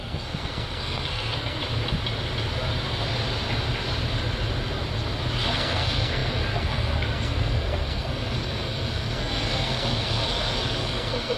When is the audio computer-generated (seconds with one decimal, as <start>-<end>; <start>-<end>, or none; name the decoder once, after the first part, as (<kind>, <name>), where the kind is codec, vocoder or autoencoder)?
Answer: 0.0-1.6 (codec, SNAC); 5.5-11.4